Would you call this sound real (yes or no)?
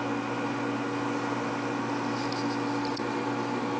yes